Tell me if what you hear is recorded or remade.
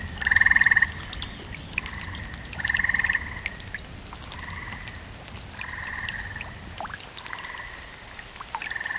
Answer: recorded